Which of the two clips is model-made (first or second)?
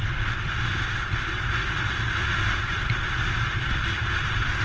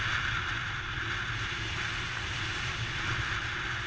first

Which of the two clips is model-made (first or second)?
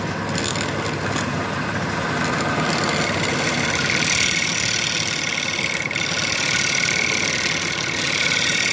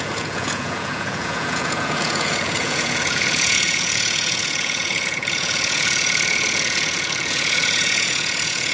second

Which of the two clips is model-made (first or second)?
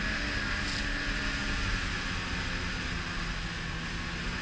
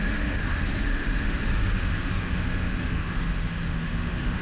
second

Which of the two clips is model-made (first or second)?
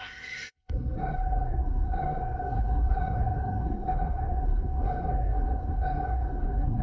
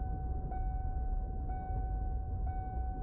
first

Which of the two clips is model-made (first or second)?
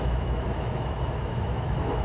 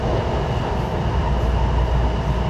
first